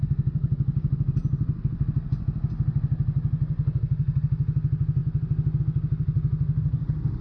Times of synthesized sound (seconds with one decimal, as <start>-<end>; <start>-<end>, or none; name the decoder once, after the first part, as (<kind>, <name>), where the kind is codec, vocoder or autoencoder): none